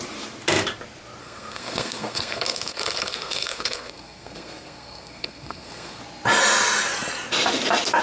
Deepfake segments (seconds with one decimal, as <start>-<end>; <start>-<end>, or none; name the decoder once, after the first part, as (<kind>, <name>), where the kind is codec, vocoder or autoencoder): 1.2-6.0 (codec, SNAC)